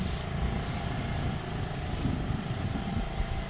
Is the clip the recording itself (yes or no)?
yes